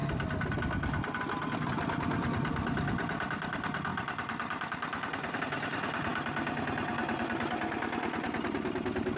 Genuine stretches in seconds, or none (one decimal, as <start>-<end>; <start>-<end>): 2.5-3.3; 6.1-6.9